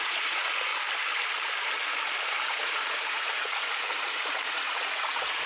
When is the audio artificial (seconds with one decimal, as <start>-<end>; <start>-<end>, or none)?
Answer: 0.0-0.7; 2.5-5.5